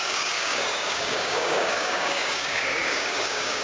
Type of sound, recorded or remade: remade